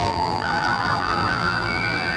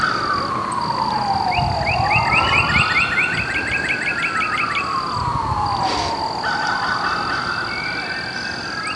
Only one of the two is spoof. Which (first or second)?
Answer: first